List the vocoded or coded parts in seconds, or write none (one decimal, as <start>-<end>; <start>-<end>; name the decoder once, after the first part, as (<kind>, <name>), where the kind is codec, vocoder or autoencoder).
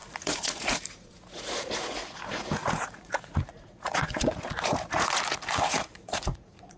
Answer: 0.0-6.8 (vocoder, Vocos)